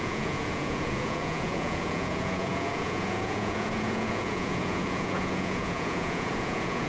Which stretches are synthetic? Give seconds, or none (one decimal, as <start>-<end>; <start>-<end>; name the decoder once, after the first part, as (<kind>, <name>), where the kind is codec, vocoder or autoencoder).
0.0-6.9 (vocoder, Vocos)